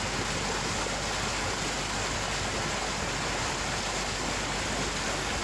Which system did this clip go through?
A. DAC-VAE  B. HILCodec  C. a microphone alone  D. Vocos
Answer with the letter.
C